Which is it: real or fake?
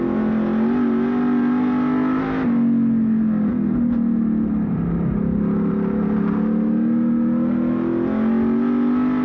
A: real